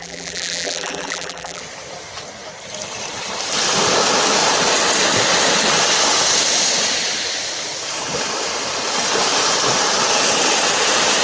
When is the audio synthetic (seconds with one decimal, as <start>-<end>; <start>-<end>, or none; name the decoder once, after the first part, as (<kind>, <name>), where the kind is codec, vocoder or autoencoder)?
0.0-1.6 (vocoder, BigVGAN v2)